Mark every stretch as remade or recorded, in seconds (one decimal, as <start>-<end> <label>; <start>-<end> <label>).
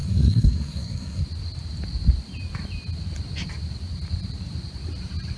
0.0-1.2 remade; 1.2-5.4 recorded